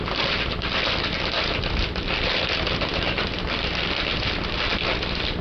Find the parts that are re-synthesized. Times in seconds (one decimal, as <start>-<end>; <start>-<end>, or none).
0.0-2.9; 5.0-5.4